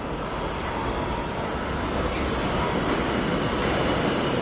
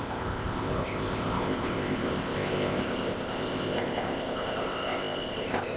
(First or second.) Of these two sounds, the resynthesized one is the second